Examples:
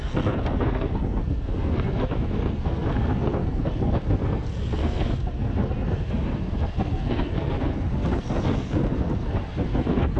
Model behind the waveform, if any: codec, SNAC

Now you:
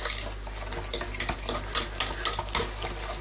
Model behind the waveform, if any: none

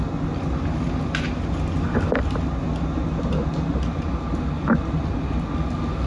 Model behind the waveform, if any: none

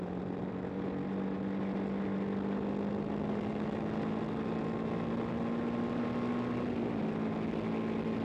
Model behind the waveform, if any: none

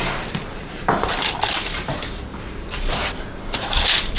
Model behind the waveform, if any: vocoder, BigVGAN v2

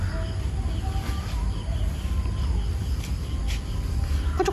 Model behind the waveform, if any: none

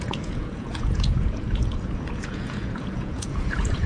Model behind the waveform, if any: vocoder, Vocos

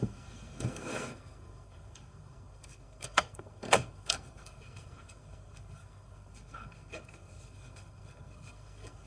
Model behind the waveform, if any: codec, SNAC